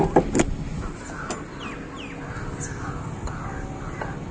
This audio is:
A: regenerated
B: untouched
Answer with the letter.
B